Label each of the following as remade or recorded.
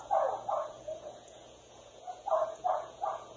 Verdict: remade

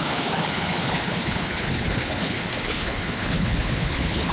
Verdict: remade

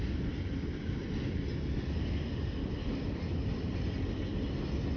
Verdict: recorded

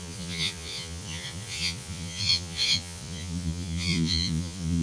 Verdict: remade